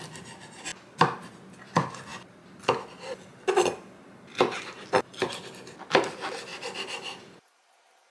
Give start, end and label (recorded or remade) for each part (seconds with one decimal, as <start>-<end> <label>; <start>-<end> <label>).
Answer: 0.0-6.5 recorded; 6.5-7.2 remade; 7.2-8.1 recorded